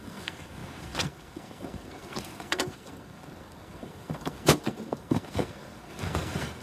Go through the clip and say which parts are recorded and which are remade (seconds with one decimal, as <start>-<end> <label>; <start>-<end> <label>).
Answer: 0.0-6.6 remade